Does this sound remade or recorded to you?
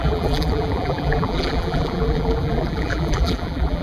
remade